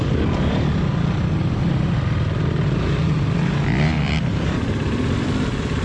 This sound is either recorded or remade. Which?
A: recorded